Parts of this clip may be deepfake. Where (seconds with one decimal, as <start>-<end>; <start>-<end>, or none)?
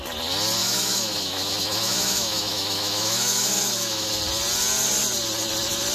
0.6-4.1